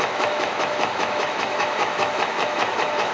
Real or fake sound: fake